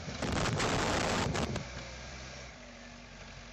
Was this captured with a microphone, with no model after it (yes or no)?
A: no